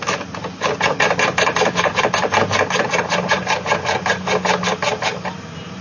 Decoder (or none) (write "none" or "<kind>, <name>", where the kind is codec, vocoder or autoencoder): none